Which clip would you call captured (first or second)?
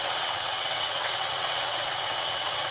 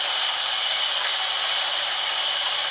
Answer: second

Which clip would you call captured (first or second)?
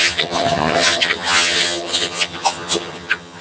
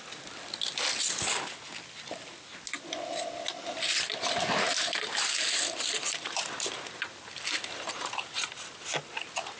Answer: second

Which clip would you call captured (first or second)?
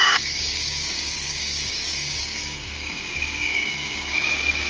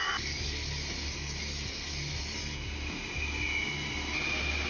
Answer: second